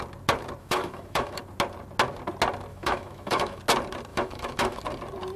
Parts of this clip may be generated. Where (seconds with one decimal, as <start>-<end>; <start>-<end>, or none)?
0.6-1.4; 2.7-3.6; 4.1-4.8